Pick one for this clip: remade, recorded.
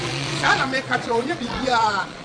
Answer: remade